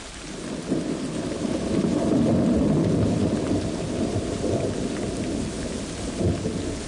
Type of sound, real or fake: real